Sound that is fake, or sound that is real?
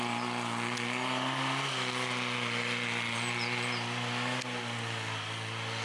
real